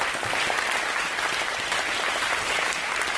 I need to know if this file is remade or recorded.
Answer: remade